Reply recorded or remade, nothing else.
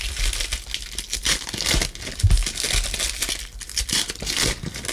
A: recorded